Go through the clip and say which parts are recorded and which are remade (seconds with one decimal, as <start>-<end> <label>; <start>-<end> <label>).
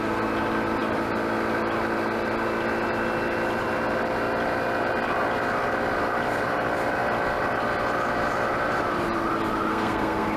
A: 0.0-9.7 recorded; 9.7-10.4 remade